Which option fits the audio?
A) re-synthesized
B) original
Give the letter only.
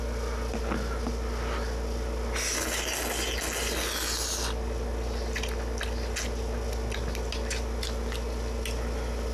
B